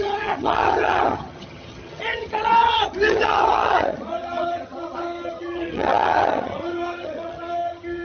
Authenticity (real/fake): fake